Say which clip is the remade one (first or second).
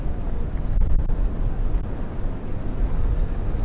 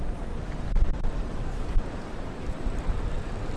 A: second